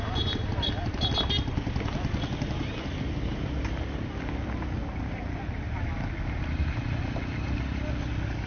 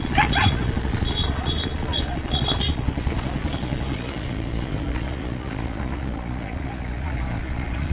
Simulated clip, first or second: second